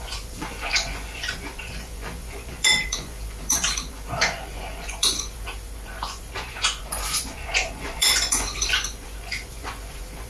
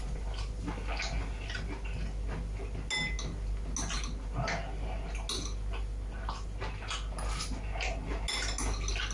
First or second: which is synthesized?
first